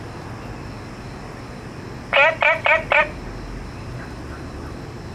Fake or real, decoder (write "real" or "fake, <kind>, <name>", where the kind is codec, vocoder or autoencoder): real